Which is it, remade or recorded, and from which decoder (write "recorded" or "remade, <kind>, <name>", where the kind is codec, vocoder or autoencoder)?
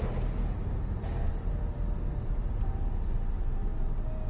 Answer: recorded